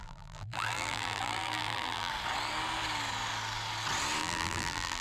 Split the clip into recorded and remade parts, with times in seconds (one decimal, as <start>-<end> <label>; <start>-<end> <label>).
0.0-2.1 remade; 2.1-4.2 recorded; 4.2-5.0 remade